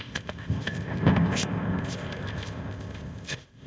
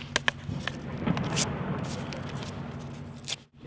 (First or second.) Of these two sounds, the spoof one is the first